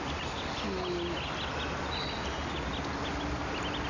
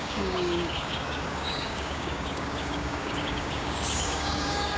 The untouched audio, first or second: first